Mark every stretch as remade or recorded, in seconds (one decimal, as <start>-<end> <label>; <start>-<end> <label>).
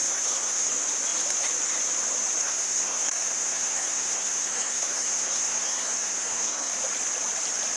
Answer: 0.0-0.7 remade; 0.7-2.4 recorded; 2.4-6.7 remade; 6.7-7.8 recorded